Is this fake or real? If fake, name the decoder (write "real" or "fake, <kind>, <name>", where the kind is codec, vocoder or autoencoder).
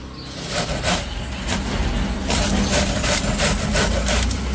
real